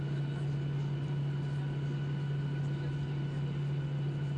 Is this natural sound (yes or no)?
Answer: yes